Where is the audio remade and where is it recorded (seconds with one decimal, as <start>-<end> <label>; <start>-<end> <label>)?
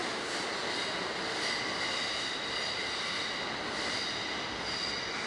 0.0-5.3 recorded